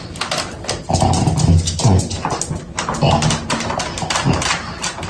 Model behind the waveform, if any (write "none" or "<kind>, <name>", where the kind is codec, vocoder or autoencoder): none